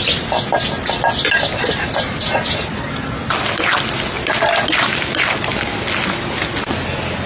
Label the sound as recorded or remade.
recorded